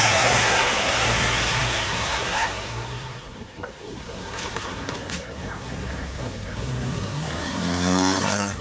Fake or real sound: fake